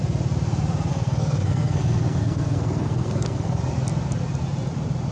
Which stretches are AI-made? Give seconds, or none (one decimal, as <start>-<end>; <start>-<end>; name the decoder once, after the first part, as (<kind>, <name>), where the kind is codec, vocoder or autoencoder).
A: 0.9-3.6 (codec, SNAC)